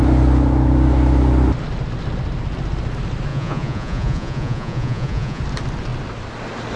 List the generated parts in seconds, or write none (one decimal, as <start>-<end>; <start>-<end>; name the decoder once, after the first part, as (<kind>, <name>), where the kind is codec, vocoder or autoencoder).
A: 3.3-5.4 (vocoder, Vocos)